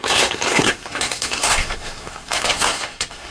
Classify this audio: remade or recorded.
remade